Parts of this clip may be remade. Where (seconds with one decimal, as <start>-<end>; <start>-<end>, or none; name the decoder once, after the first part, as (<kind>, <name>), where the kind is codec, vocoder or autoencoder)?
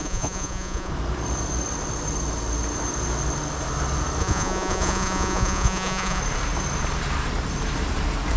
0.0-0.9 (vocoder, Vocos); 4.2-6.2